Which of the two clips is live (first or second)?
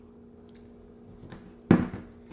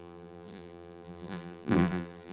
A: first